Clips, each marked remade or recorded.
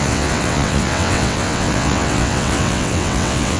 remade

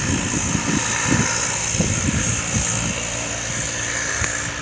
recorded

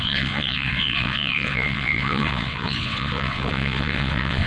remade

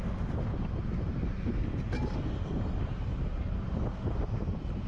recorded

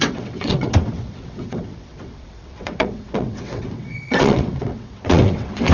remade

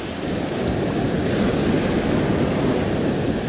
recorded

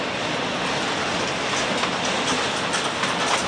recorded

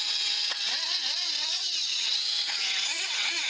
remade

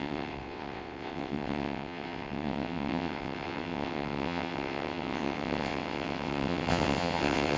remade